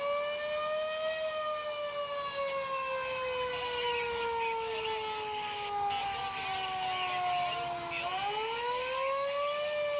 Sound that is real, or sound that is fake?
real